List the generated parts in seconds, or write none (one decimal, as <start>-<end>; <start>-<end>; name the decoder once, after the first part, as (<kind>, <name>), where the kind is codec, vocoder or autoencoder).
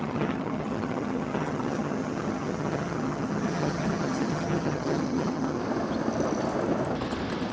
0.0-5.6 (vocoder, HiFi-GAN)